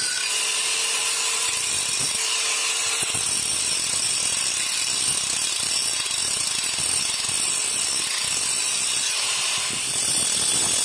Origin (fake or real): real